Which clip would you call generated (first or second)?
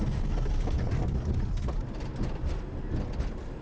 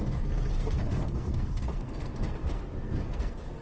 second